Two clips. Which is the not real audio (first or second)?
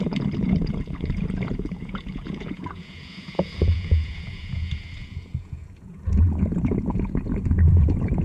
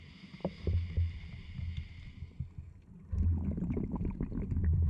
first